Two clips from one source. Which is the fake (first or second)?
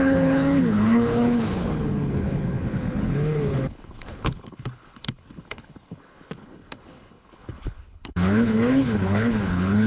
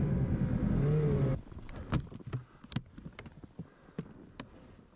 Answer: first